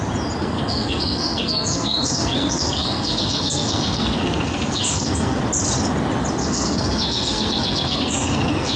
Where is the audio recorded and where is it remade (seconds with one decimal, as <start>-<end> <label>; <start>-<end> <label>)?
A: 0.0-0.4 recorded; 0.4-5.4 remade; 5.4-6.4 recorded; 6.4-8.8 remade